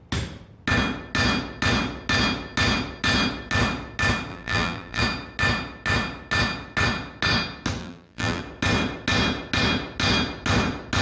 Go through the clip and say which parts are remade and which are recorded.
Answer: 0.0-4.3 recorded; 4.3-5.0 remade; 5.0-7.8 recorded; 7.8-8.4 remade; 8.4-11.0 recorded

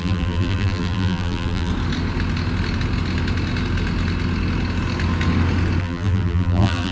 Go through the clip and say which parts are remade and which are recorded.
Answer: 0.0-1.7 remade; 1.7-5.8 recorded; 5.8-6.9 remade

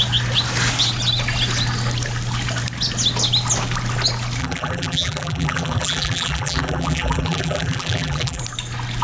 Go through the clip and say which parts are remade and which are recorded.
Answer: 0.0-4.4 recorded; 4.4-8.4 remade; 8.4-9.0 recorded

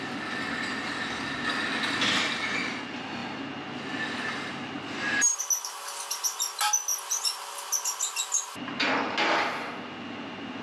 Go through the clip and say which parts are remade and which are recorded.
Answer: 0.0-6.9 recorded; 6.9-7.4 remade; 7.4-10.6 recorded